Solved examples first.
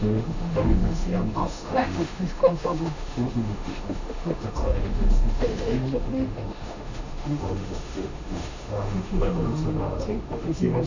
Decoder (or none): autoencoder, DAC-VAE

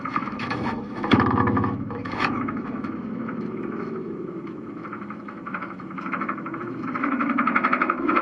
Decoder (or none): autoencoder, DAC-VAE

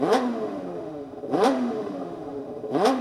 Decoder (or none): autoencoder, DAC-VAE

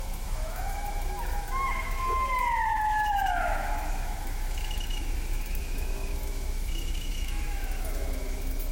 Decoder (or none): autoencoder, DAC-VAE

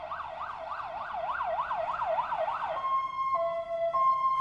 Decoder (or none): none